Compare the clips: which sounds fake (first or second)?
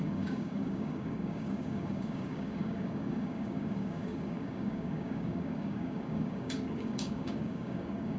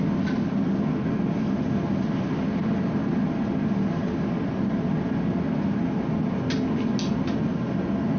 first